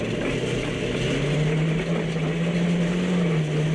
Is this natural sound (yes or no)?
yes